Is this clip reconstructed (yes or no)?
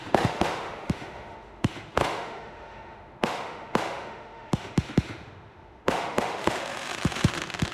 yes